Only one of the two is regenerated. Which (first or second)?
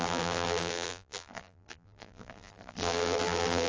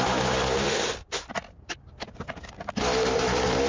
first